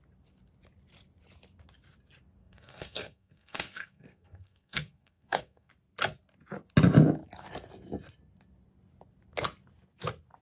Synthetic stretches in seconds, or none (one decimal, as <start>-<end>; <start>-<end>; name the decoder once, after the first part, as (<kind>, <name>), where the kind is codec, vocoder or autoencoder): 2.4-5.7 (codec, SNAC)